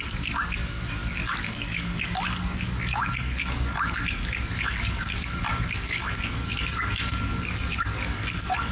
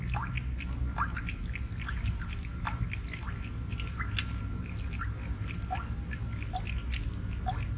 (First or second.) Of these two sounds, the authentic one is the second